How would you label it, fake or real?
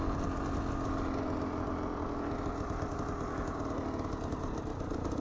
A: real